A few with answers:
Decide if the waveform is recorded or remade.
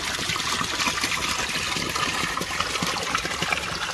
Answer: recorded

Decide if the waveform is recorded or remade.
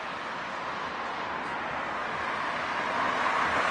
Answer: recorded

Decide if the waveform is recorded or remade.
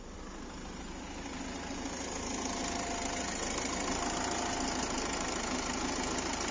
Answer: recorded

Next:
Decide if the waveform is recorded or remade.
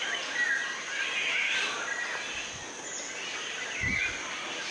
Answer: recorded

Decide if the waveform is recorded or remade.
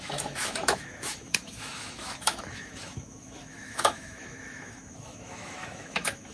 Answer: remade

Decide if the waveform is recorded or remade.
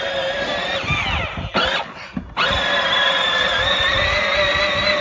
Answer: recorded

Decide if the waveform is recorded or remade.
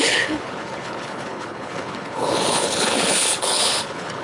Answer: remade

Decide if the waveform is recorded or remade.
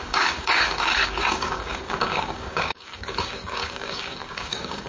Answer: remade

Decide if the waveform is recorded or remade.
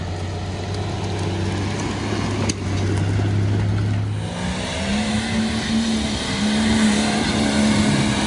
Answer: recorded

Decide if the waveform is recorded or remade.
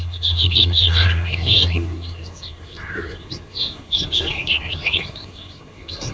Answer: remade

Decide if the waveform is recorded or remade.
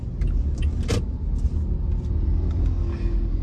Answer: recorded